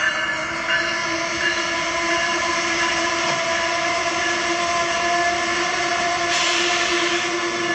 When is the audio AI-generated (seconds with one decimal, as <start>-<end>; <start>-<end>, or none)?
1.0-5.1; 5.9-7.7